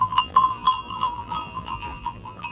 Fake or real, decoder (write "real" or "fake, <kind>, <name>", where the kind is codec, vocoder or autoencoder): fake, vocoder, BigVGAN v2